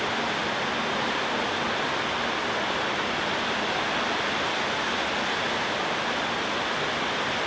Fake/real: real